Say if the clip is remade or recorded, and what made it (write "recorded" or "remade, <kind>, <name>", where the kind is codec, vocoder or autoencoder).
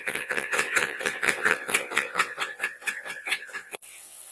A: remade, vocoder, WaveNeXt